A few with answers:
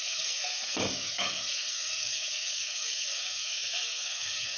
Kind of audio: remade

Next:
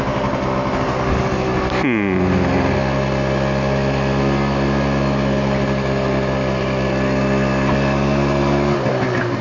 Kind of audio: recorded